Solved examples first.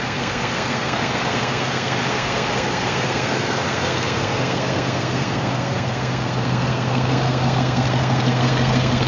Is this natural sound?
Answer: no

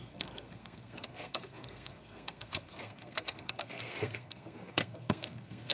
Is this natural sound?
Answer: no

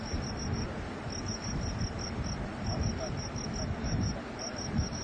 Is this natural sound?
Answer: yes